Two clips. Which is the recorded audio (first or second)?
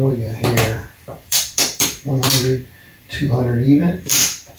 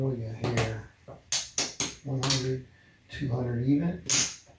second